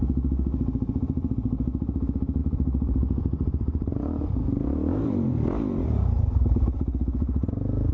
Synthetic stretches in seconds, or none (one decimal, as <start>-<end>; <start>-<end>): 2.4-5.1